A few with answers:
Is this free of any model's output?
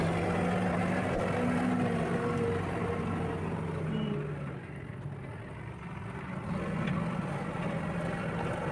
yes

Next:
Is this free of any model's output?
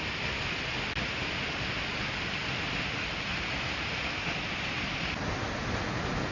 yes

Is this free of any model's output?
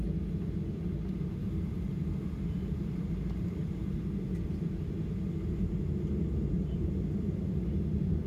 yes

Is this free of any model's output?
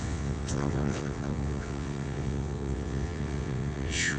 no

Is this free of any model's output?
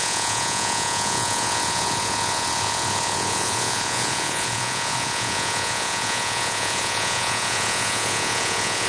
no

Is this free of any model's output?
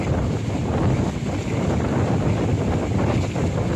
yes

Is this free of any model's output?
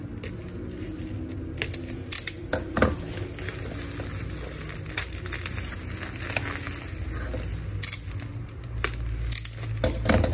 yes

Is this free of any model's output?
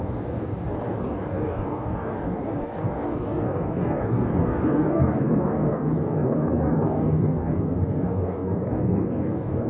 no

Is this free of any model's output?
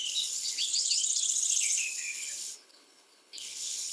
no